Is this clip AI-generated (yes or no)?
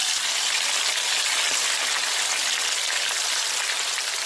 no